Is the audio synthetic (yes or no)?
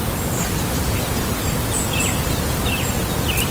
yes